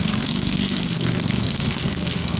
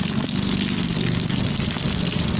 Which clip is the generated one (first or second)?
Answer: first